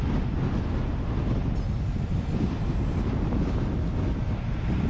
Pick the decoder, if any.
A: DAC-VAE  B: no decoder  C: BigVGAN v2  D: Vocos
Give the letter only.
B